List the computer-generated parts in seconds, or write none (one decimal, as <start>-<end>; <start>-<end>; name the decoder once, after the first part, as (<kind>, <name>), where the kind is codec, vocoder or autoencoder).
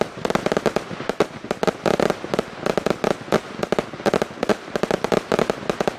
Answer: none